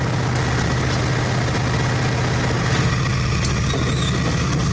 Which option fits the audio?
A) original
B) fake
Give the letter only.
A